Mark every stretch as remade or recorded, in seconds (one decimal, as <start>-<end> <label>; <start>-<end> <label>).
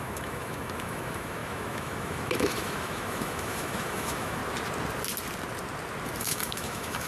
0.0-4.4 remade; 4.4-6.2 recorded; 6.2-7.1 remade